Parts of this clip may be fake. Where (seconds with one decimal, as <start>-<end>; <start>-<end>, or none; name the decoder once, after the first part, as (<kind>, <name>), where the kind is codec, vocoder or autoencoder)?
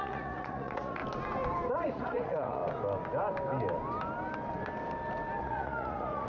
0.0-1.0 (vocoder, Vocos); 1.7-2.6; 5.4-6.3